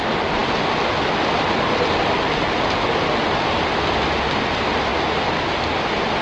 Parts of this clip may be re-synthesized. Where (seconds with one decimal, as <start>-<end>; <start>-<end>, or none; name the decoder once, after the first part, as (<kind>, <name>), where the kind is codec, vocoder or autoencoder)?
none